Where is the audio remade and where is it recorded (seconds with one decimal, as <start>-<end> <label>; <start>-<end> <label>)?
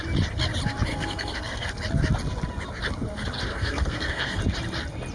0.0-0.9 recorded; 0.9-1.7 remade; 1.7-3.5 recorded; 3.5-4.4 remade; 4.4-5.1 recorded